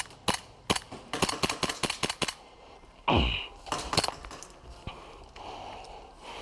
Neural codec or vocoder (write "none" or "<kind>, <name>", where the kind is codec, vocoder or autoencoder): none